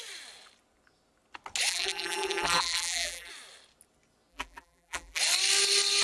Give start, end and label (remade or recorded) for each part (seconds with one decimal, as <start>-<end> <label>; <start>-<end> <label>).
0.0-1.7 recorded; 1.7-3.3 remade; 3.3-4.3 recorded; 4.3-5.2 remade; 5.2-6.0 recorded

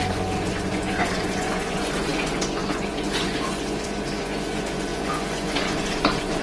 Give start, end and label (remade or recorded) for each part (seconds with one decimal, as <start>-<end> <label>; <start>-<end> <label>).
0.0-6.4 remade